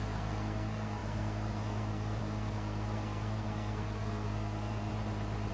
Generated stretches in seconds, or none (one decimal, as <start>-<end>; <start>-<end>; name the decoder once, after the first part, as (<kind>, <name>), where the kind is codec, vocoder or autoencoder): 0.0-4.9 (codec, SNAC)